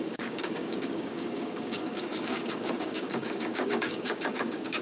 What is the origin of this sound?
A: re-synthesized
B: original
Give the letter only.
A